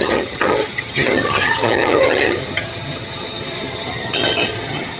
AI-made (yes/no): yes